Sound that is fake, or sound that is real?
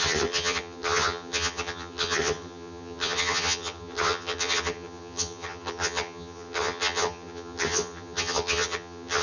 fake